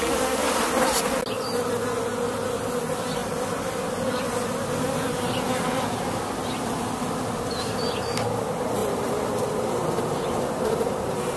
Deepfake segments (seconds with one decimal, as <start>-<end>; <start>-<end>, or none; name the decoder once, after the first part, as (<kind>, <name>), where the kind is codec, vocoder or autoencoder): 0.4-1.0 (vocoder, BigVGAN v2); 8.8-11.4

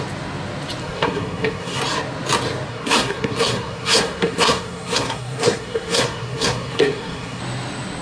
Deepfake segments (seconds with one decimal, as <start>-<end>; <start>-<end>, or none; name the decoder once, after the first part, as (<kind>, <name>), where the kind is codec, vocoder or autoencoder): 0.8-1.8 (codec, SNAC); 2.7-7.4

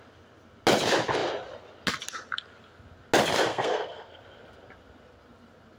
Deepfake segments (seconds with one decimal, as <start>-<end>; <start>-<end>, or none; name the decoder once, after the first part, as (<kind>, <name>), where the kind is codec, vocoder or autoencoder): 3.5-4.2 (codec, SNAC)